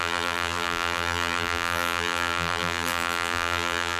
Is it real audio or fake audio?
fake